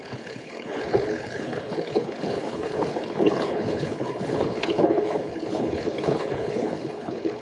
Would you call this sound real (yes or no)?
no